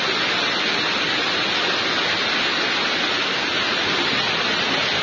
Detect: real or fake real